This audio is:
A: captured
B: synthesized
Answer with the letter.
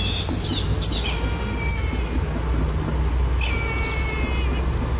A